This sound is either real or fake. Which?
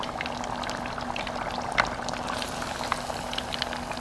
real